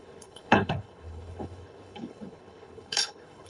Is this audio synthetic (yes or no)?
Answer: yes